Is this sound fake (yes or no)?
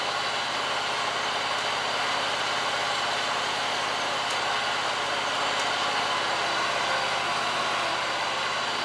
no